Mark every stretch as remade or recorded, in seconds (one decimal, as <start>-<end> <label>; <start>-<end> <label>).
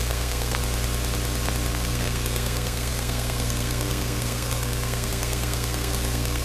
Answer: 0.0-0.6 remade; 0.6-1.7 recorded; 1.7-6.4 remade